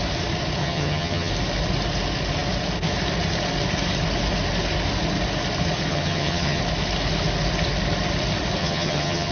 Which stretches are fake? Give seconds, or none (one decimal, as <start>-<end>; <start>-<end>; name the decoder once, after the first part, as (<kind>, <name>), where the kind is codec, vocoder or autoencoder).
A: 0.6-1.3 (vocoder, HiFi-GAN); 5.9-6.6; 8.6-9.3